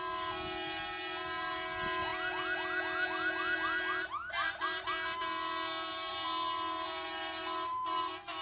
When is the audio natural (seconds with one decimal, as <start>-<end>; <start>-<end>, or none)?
0.0-8.4